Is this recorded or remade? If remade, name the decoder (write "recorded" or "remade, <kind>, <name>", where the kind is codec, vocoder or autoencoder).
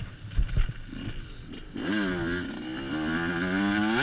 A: recorded